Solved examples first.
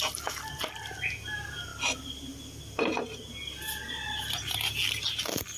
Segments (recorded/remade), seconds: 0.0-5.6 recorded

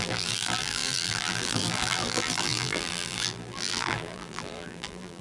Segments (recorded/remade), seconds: 0.0-5.2 remade

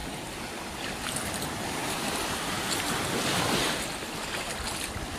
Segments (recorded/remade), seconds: 0.0-5.2 recorded